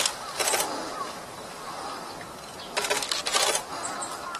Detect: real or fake real